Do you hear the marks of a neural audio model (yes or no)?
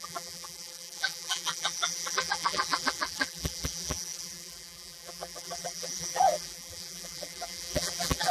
yes